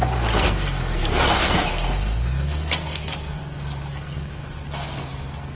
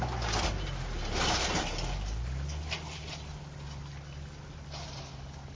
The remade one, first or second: first